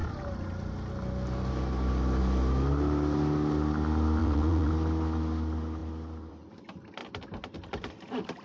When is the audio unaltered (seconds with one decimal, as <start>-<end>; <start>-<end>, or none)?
0.0-4.2; 4.7-8.4